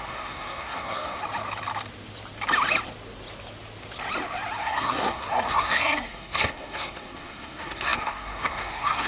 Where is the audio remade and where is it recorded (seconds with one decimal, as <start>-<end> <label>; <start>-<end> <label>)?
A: 0.0-1.2 remade; 1.2-4.6 recorded; 4.6-9.1 remade